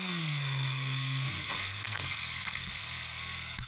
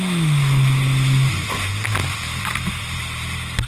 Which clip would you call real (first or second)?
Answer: second